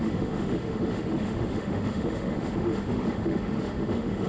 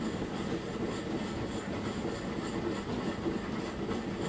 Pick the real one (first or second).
second